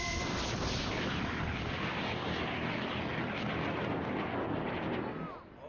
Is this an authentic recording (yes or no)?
yes